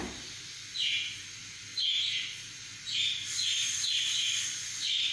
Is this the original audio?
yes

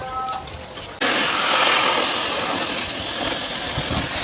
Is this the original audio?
yes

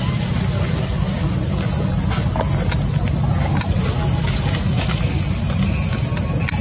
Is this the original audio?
yes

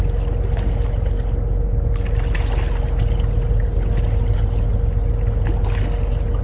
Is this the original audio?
yes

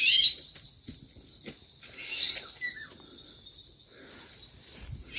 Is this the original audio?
yes